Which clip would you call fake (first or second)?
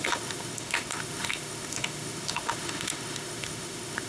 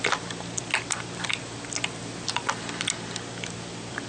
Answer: first